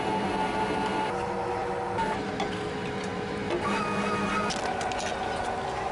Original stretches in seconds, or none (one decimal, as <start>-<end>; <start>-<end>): 0.0-5.9